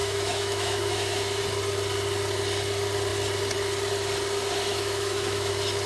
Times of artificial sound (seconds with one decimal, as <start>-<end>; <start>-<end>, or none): 0.0-1.4; 4.7-5.5